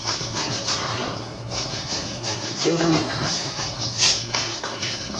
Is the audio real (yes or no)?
no